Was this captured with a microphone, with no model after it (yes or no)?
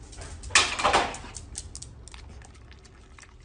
yes